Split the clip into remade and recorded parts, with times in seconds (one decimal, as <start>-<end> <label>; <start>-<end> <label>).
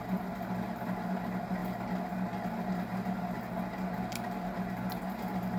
0.0-5.6 recorded